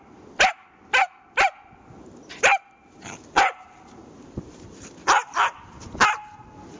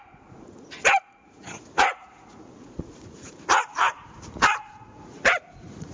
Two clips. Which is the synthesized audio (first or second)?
second